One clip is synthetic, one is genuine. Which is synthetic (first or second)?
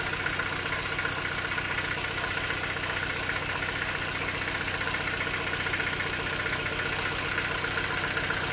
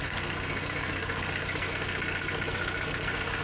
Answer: second